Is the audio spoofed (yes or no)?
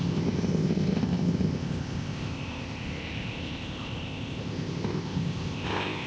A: yes